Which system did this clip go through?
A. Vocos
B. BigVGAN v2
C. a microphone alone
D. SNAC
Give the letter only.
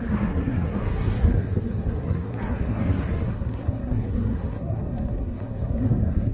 D